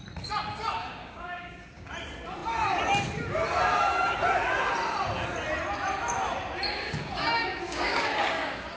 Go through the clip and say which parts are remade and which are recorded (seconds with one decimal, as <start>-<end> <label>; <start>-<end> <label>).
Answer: 0.0-0.8 recorded; 0.8-1.9 remade; 1.9-6.7 recorded; 6.7-8.8 remade